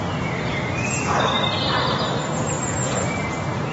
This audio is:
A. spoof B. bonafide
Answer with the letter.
B